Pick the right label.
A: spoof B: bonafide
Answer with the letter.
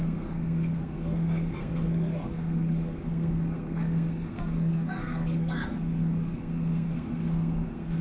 A